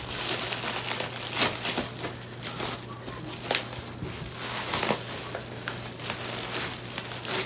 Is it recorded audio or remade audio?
recorded